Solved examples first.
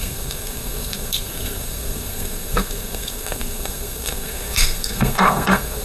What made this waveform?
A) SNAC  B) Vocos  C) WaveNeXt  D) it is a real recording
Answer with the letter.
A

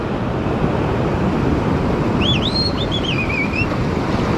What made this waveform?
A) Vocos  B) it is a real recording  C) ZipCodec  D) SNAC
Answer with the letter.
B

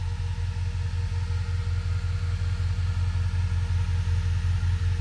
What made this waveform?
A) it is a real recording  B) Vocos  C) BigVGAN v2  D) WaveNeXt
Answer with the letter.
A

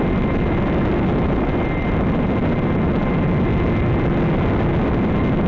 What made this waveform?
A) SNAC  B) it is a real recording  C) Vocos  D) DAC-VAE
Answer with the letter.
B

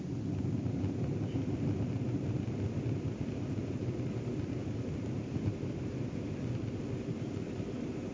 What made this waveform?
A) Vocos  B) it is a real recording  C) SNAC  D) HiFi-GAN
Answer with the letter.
B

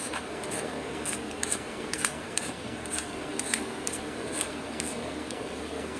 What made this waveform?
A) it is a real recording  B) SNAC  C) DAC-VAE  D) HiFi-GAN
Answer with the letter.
B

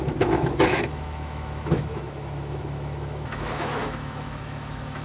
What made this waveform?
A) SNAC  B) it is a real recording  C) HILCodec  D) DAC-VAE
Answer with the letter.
D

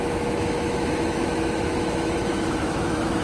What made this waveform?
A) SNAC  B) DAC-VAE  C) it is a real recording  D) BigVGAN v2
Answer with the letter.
B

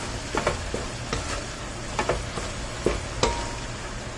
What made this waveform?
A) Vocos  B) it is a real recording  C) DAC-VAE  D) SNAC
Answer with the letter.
B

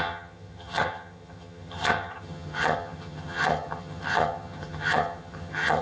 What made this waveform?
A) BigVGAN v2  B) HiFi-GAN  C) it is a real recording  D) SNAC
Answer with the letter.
B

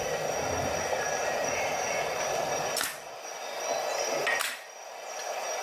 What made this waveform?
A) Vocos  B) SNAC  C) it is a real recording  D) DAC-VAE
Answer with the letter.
C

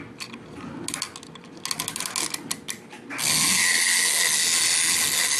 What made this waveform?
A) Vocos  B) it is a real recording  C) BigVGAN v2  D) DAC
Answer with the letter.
B